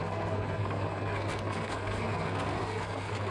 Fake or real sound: fake